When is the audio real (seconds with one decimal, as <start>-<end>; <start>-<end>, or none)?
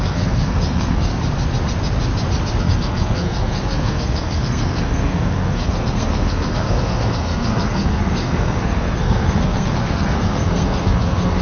1.1-2.6